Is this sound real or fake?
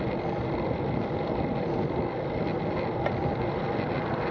real